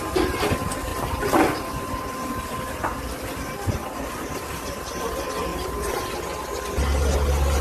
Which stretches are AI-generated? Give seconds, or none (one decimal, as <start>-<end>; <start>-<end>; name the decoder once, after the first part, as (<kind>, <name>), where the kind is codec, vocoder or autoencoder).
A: 5.5-6.2 (vocoder, BigVGAN v2)